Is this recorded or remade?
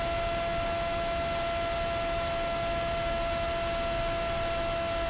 recorded